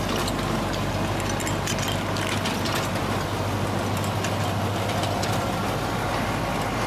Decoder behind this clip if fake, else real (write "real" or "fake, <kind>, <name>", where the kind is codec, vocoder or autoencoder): real